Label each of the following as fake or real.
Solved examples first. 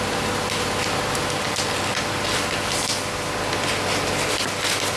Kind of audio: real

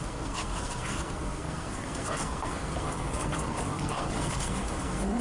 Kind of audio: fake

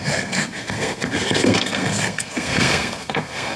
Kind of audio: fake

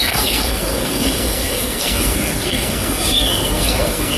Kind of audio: fake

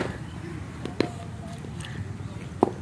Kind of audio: real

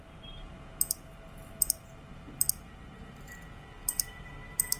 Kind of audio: real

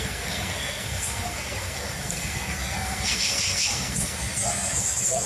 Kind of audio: fake